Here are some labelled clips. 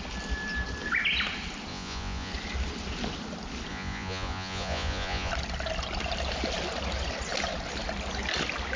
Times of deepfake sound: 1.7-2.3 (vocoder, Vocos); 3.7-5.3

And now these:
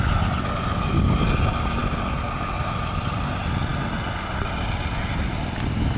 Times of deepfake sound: none

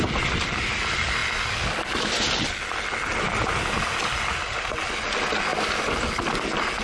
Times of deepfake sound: none

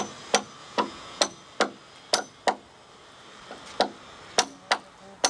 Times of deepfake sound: 0.6-1.2 (vocoder, Vocos)

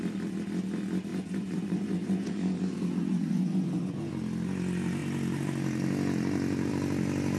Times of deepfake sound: 1.1-4.1 (vocoder, Vocos)